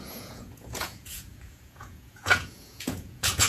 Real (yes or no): no